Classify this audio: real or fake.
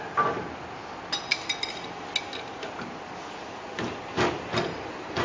real